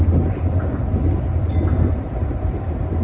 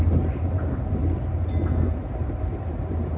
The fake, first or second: first